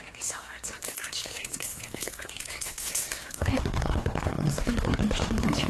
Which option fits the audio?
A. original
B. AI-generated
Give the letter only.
B